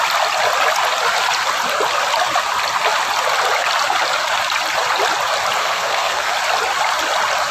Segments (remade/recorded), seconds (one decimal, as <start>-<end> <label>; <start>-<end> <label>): 0.0-5.6 recorded; 5.6-6.3 remade; 6.3-7.5 recorded